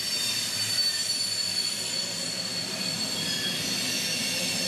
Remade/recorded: recorded